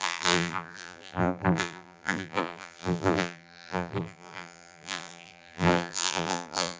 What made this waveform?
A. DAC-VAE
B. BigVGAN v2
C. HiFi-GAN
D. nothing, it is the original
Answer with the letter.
B